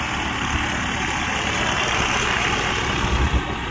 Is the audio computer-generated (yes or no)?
yes